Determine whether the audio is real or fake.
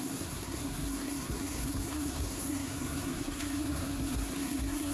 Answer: fake